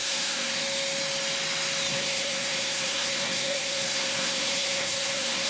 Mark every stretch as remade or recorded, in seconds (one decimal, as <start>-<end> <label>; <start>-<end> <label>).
0.0-0.6 remade; 0.6-1.9 recorded; 1.9-5.5 remade